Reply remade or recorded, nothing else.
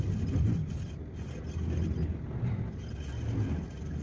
recorded